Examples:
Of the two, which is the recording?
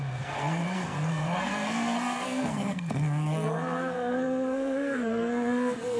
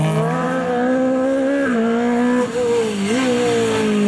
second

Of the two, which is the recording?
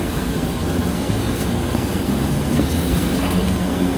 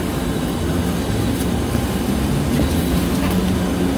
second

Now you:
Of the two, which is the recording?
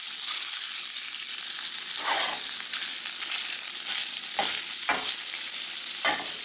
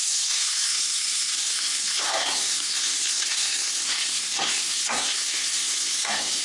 first